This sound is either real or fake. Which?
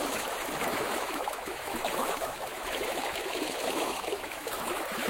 fake